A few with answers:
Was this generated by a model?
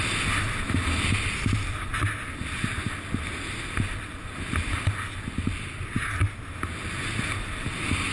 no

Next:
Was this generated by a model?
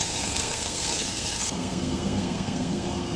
yes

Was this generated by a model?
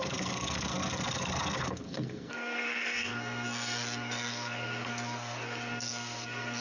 yes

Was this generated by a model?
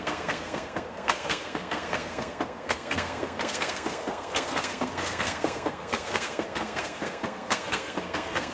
yes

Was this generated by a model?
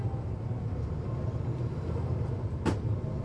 no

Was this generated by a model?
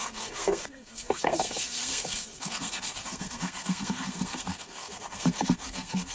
yes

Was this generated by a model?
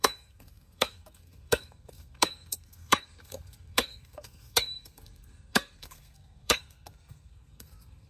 yes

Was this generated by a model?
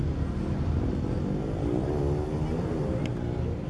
no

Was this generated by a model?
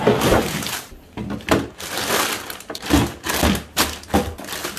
no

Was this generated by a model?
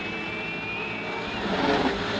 no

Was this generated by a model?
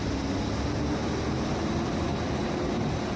no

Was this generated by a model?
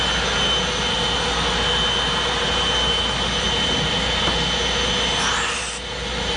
no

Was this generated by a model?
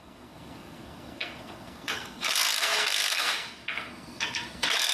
yes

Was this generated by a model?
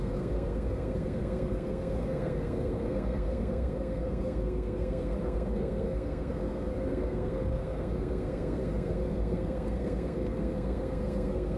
yes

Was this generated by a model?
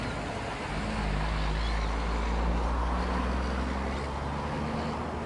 no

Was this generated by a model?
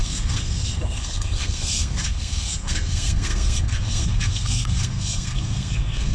yes